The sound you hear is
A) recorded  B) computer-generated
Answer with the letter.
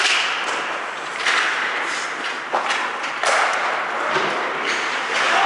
A